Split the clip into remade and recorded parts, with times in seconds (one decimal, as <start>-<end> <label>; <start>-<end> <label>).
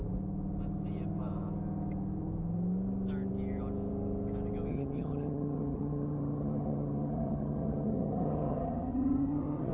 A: 0.0-4.7 recorded; 4.7-9.7 remade